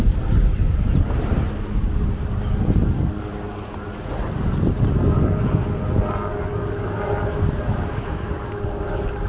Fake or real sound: real